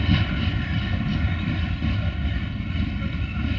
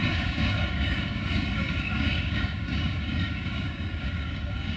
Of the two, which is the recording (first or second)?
first